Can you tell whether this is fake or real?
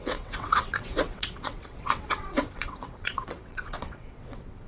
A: fake